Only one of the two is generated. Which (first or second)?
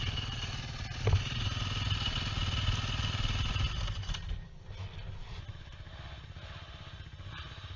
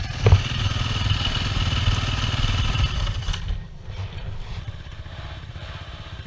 second